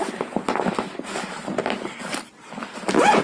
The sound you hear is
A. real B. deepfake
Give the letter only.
A